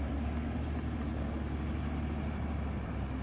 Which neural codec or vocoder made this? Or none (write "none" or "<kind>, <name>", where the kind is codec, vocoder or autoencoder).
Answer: none